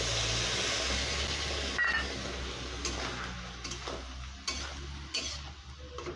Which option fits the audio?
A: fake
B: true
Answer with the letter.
B